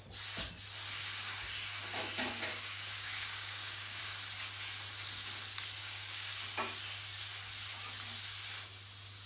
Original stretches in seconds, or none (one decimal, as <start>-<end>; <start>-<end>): 0.0-2.5; 4.0-5.8; 6.3-9.3

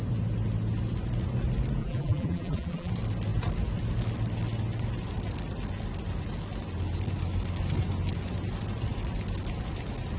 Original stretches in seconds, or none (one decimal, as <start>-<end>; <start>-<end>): 0.0-1.8; 2.9-10.2